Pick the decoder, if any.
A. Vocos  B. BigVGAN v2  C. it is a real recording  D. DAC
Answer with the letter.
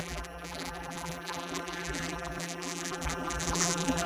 B